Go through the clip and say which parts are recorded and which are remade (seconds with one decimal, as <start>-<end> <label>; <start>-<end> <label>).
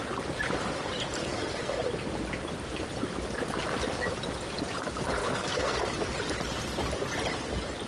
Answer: 0.0-1.2 recorded; 1.2-1.8 remade; 1.8-5.2 recorded; 5.2-5.8 remade; 5.8-7.9 recorded